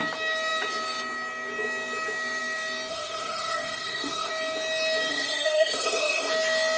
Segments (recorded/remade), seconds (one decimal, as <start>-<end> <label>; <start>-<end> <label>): 0.0-2.9 recorded; 2.9-4.3 remade; 4.3-5.1 recorded; 5.1-6.3 remade; 6.3-6.8 recorded